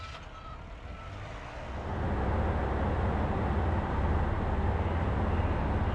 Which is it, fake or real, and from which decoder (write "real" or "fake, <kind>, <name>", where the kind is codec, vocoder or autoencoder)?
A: real